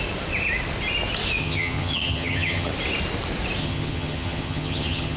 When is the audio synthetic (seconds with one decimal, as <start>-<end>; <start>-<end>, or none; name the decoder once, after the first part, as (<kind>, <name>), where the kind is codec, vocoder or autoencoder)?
1.4-2.7 (vocoder, HiFi-GAN); 3.6-5.2